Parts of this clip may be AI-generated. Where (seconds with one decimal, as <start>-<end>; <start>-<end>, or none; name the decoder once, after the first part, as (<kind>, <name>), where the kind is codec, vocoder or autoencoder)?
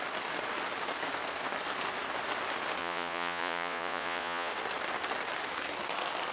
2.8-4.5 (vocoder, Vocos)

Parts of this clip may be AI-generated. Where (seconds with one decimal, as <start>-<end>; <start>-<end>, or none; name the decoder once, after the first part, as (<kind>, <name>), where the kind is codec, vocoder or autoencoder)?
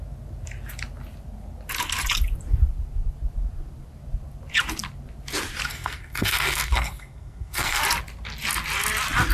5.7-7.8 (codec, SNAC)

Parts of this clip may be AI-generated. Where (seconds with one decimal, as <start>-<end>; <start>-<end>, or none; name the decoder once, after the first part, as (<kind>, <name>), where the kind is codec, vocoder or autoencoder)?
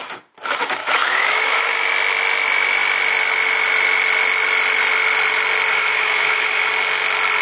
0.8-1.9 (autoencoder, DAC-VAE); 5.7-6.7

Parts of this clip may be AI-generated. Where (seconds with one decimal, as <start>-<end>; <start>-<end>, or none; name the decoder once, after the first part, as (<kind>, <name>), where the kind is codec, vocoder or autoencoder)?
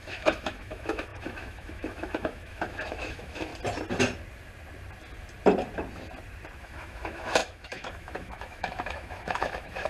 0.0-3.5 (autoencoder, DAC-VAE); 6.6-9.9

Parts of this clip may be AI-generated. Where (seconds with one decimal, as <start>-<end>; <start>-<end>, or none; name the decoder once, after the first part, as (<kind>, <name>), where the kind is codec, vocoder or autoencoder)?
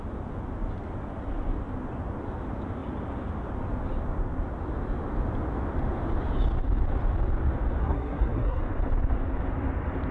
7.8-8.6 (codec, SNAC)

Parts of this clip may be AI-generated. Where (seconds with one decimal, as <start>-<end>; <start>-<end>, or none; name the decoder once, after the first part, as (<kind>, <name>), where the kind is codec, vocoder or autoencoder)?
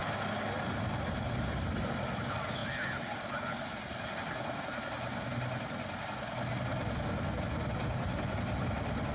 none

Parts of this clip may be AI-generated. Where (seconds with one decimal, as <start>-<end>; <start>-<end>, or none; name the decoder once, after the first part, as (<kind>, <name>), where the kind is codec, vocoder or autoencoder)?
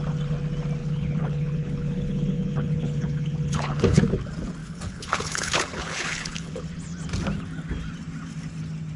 0.8-4.0 (codec, HILCodec); 4.6-6.6